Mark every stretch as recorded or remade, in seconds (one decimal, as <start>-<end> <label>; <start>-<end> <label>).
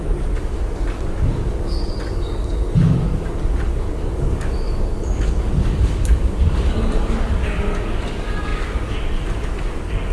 0.0-10.1 remade